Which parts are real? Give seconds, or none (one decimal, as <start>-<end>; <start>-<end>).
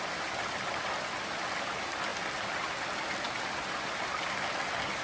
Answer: 0.0-5.0